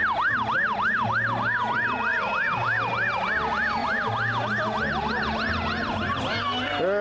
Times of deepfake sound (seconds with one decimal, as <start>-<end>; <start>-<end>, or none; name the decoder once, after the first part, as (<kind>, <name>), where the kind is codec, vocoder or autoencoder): 2.1-3.3 (vocoder, BigVGAN v2)